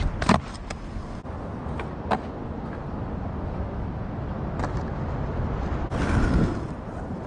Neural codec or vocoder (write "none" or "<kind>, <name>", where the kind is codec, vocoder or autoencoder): none